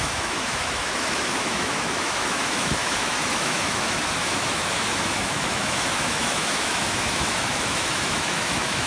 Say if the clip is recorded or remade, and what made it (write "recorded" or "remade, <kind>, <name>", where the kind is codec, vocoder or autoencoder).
remade, autoencoder, DAC-VAE